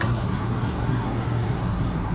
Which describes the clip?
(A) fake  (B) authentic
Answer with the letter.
A